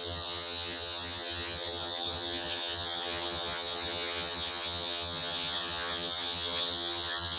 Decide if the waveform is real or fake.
fake